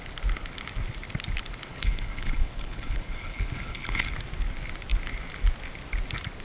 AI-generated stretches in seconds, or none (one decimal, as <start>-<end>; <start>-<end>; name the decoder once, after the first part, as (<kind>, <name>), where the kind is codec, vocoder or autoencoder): 1.7-4.1 (codec, HILCodec)